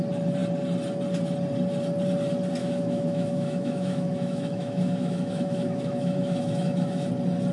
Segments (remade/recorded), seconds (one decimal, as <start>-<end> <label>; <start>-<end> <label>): 0.0-2.6 recorded; 2.6-7.1 remade; 7.1-7.5 recorded